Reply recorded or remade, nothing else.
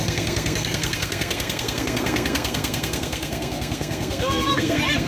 remade